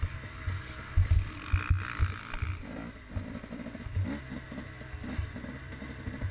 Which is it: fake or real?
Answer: real